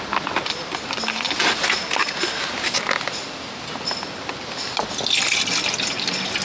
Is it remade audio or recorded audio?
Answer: recorded